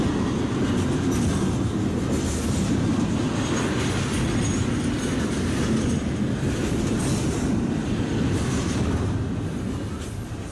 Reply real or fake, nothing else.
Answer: real